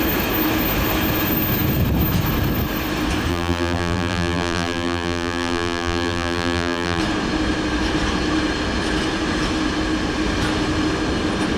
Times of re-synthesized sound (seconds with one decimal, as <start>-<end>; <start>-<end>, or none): 3.3-7.0